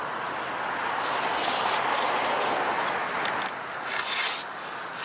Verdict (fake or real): real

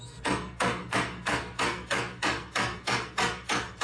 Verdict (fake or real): fake